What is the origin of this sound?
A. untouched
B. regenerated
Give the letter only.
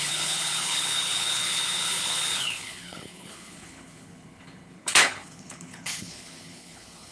B